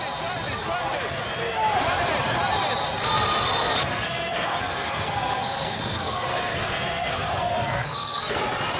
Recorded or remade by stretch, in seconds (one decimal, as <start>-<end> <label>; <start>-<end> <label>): 0.0-3.7 recorded; 3.7-8.4 remade; 8.4-8.8 recorded